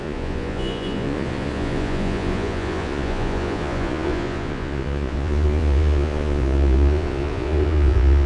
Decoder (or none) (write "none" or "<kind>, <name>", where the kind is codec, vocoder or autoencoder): vocoder, Vocos